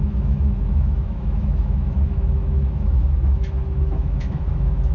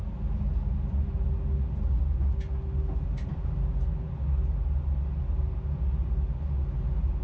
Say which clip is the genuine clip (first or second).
second